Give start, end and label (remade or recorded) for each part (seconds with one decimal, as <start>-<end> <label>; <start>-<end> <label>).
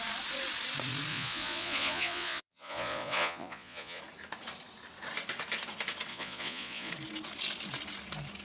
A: 0.0-1.1 recorded; 1.1-4.0 remade; 4.0-6.1 recorded; 6.1-6.9 remade; 6.9-8.4 recorded